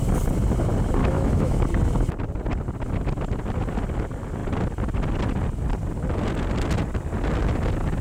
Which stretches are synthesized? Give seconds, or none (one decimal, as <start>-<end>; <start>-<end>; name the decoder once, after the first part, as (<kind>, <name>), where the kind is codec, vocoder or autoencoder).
1.0-1.6 (autoencoder, DAC-VAE)